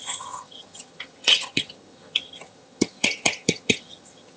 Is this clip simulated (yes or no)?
yes